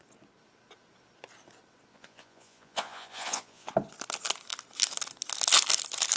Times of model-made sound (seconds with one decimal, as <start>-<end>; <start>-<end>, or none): 1.9-3.7